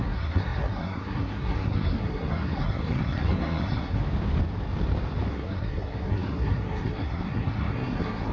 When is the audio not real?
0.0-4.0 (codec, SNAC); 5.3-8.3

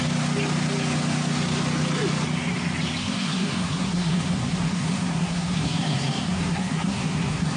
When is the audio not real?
3.0-7.6 (codec, SNAC)

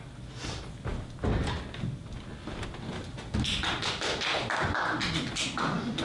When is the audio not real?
none

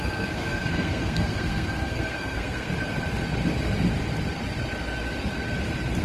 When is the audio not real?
0.0-2.7 (codec, SNAC)

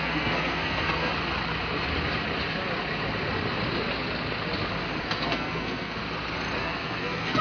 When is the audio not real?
0.0-1.1 (codec, SNAC); 5.0-6.0; 6.6-7.4

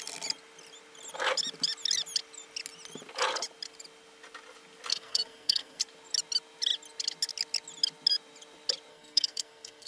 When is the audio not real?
4.9-5.8 (codec, SNAC); 8.9-9.9